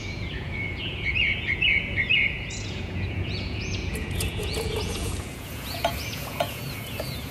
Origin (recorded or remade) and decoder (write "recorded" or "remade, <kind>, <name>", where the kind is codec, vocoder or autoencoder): remade, vocoder, Vocos